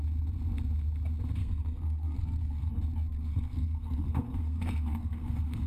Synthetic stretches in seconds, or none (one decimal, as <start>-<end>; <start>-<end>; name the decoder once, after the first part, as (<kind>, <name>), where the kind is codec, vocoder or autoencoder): 1.4-2.7 (codec, SNAC); 3.1-5.7